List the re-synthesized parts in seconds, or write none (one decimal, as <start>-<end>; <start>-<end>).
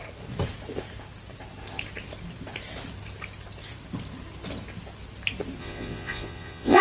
5.6-6.8